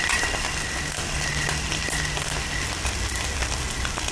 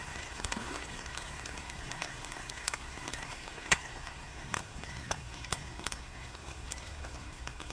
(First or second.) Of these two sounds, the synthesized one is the second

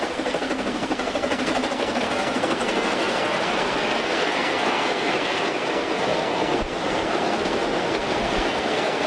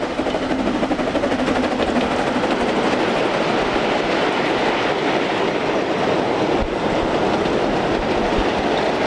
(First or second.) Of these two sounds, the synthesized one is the first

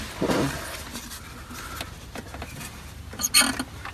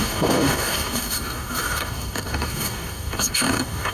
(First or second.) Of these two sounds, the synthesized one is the second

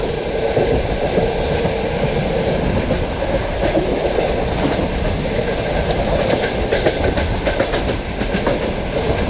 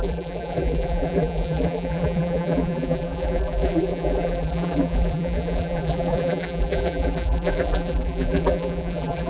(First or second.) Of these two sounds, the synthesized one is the second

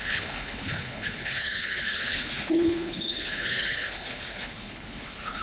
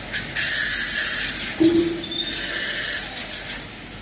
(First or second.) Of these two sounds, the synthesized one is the first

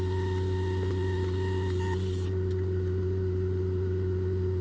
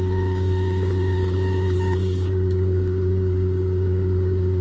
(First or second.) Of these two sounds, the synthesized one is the second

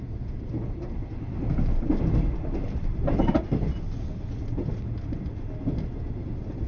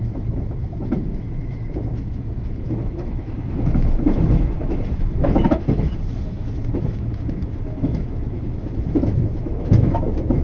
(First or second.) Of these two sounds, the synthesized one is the second